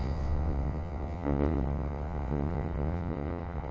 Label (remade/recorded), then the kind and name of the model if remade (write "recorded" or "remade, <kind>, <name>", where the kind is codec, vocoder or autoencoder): remade, vocoder, WaveNeXt